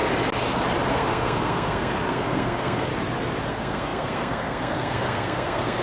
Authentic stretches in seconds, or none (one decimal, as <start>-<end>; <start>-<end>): 0.0-0.9; 2.9-3.5